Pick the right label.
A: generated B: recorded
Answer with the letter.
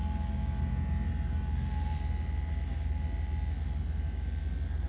B